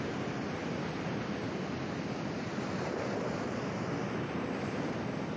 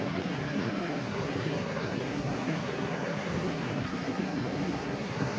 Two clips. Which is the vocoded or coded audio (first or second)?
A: second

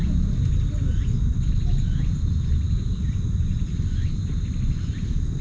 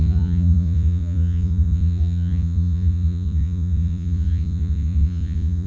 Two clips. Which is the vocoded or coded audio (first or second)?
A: second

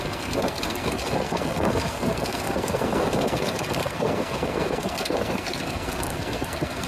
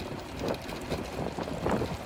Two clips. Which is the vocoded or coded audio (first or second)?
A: first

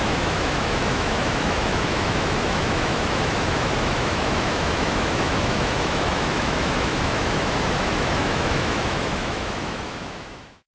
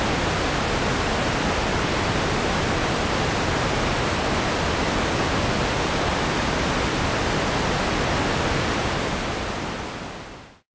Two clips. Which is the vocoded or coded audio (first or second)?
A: first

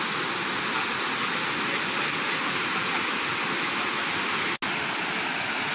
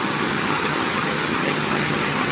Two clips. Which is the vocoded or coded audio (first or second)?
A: second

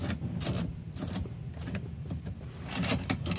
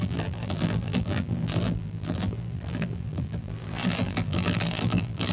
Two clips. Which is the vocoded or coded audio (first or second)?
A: second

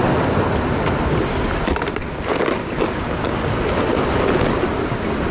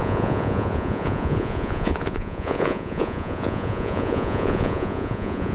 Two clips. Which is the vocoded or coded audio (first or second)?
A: second